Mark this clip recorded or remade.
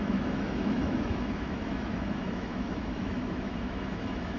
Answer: remade